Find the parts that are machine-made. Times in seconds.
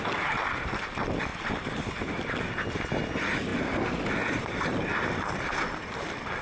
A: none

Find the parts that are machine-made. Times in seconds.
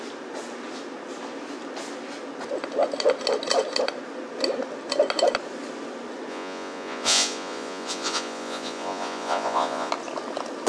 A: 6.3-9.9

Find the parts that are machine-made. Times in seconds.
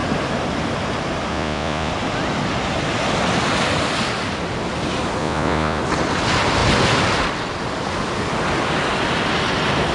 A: 1.3-1.9; 5.2-5.8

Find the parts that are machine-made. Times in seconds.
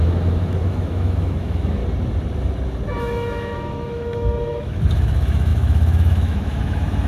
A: 0.0-1.8; 3.0-7.1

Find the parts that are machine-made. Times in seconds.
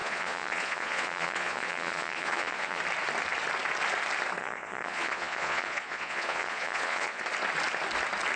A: 0.0-2.8; 4.4-7.2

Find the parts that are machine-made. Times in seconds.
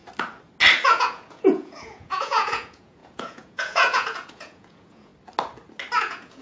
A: 0.9-5.1; 6.0-6.4